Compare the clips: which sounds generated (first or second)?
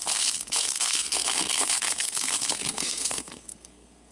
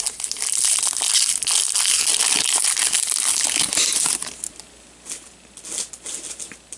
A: first